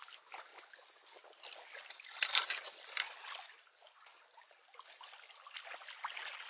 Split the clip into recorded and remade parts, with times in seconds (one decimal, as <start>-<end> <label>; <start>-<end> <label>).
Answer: 0.0-6.5 recorded